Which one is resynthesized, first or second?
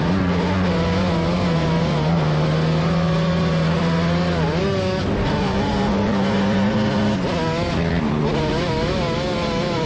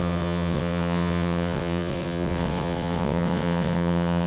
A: second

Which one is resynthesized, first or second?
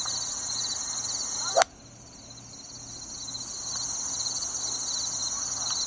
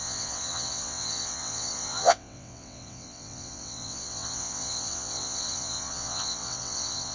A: second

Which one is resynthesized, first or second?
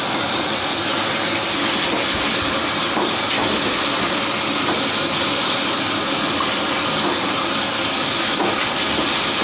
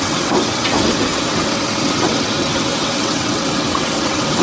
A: second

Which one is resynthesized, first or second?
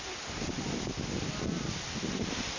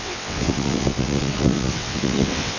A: second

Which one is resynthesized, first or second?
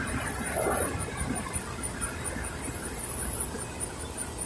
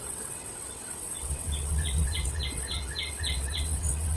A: second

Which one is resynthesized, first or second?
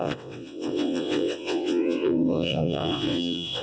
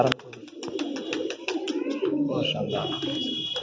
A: first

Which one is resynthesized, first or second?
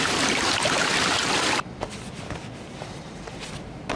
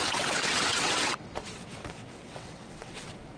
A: second